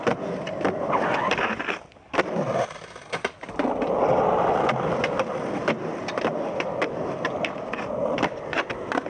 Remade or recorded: recorded